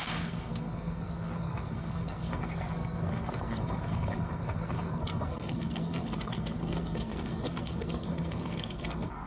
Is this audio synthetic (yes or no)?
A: yes